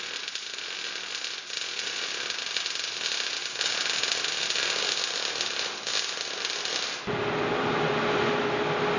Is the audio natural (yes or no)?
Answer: yes